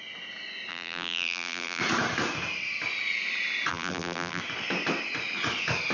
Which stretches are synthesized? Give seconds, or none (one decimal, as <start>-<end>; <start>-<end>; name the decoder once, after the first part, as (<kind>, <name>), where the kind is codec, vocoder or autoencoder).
0.7-1.8 (vocoder, BigVGAN v2); 3.7-4.4